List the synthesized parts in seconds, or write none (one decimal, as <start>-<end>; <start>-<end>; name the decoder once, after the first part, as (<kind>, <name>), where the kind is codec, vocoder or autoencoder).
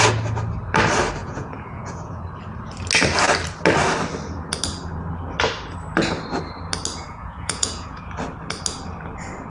1.2-2.2 (vocoder, Vocos); 7.1-8.0